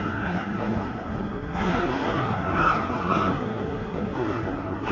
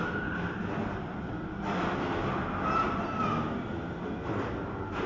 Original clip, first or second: second